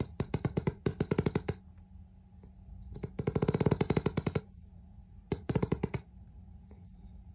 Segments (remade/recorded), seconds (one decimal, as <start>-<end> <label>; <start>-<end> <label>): 0.0-0.9 remade; 0.9-4.4 recorded; 4.4-7.3 remade